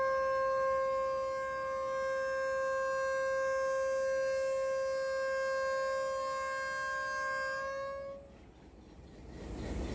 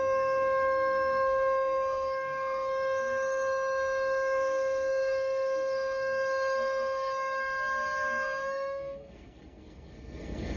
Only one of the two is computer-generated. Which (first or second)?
second